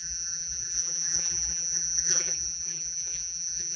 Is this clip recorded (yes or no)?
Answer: no